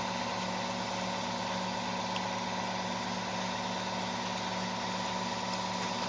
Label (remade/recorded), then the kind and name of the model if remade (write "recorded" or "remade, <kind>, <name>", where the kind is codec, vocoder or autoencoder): recorded